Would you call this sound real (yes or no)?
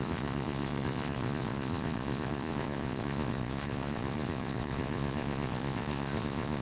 no